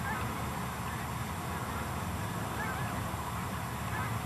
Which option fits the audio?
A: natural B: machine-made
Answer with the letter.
A